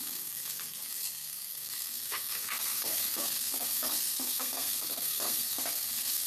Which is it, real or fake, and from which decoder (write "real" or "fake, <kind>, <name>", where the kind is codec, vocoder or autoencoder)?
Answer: fake, codec, SNAC